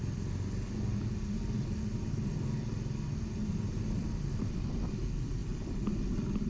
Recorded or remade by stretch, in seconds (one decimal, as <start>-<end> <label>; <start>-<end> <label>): 0.0-6.5 recorded